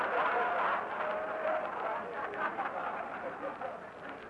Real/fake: real